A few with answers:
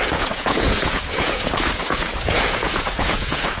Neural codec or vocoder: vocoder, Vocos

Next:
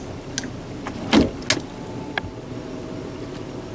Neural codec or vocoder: none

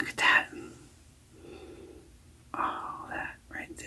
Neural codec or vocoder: none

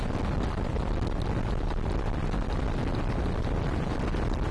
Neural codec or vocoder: none